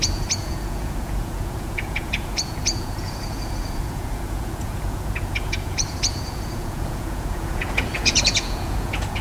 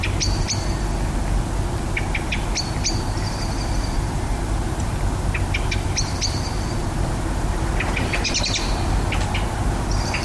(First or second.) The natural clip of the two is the second